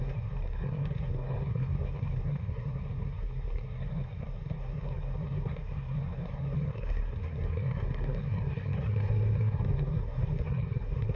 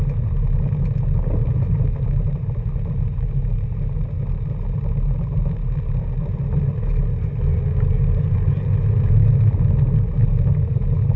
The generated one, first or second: first